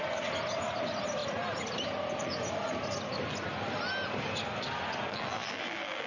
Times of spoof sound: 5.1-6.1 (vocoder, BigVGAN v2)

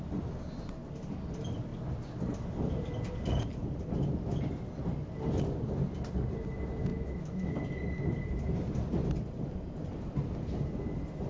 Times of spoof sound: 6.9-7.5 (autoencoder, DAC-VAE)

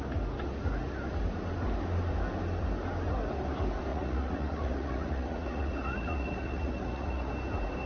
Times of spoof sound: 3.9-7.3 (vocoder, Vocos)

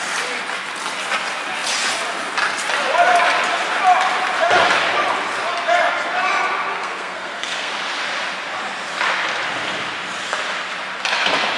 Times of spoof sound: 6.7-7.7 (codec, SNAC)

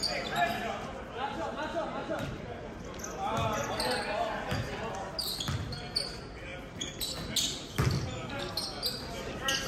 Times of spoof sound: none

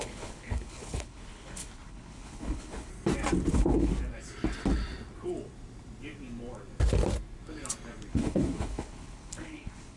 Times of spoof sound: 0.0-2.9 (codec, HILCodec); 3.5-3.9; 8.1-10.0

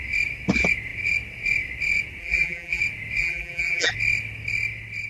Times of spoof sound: 2.2-2.8 (vocoder, BigVGAN v2); 3.2-3.9